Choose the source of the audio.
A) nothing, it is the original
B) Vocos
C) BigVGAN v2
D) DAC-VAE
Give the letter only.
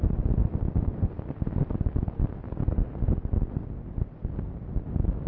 A